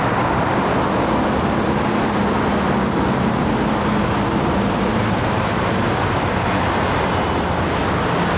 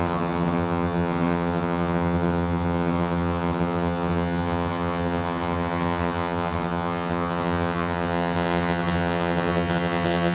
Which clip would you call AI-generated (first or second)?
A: second